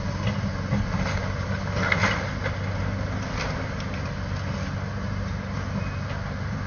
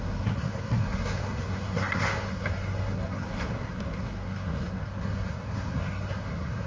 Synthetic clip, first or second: second